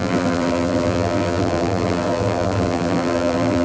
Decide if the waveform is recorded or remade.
remade